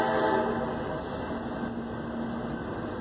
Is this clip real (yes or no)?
yes